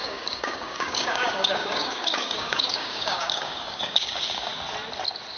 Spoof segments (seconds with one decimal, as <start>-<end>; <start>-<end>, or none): 0.0-4.5